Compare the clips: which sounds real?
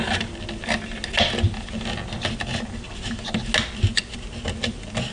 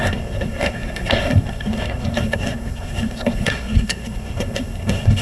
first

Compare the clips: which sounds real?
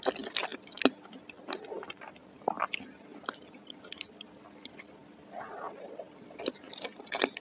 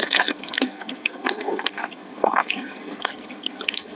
first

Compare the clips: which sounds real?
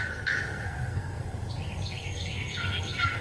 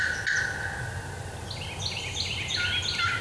second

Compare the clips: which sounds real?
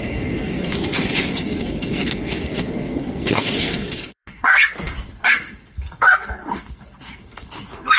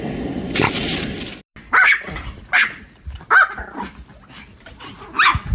second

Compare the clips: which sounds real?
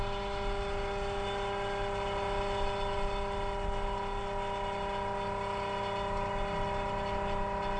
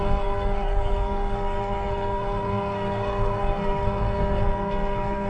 first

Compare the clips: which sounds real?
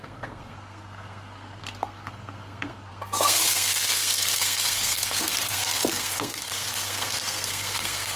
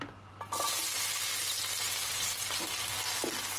second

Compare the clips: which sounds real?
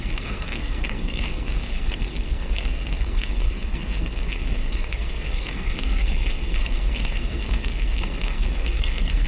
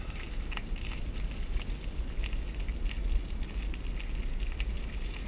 second